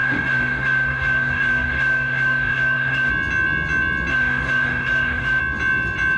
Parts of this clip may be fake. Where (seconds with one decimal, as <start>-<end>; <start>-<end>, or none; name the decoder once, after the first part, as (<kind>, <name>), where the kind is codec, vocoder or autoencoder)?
0.0-3.1 (autoencoder, DAC-VAE); 4.1-5.4